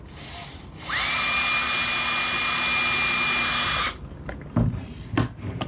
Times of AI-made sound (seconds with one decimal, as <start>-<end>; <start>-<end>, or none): none